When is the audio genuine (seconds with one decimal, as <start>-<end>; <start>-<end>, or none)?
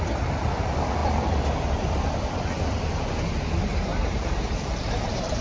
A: 0.0-3.7